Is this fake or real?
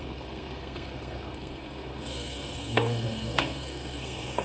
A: fake